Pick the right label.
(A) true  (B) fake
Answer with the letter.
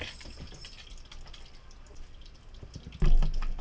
A